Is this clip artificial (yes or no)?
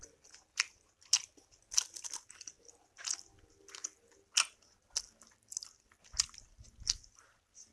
no